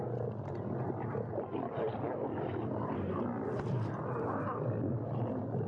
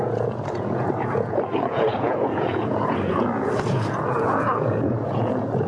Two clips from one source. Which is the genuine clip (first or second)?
first